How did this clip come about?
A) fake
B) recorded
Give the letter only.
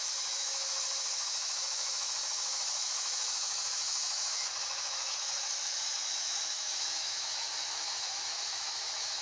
A